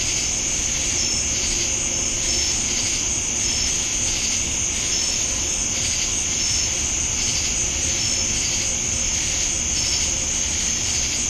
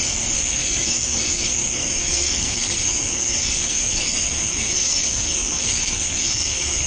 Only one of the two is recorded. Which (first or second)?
first